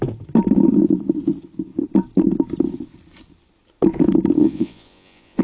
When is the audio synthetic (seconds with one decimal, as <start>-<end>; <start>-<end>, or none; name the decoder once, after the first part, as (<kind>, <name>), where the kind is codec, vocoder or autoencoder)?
4.4-5.4 (vocoder, Vocos)